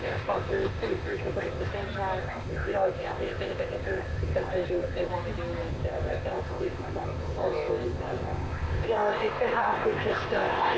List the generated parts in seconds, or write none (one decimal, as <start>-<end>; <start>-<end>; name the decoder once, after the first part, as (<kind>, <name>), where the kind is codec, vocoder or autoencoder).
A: 0.0-1.7 (codec, ZipCodec); 2.2-5.1; 5.7-10.8